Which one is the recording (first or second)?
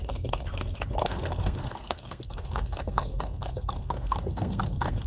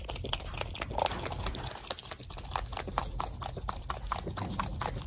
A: second